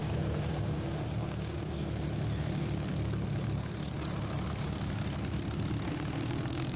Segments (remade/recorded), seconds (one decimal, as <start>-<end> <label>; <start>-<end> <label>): 0.0-1.8 remade; 1.8-5.9 recorded; 5.9-6.8 remade